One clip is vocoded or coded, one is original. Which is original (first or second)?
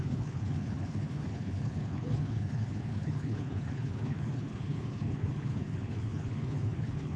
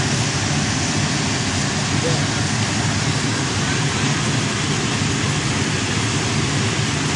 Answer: second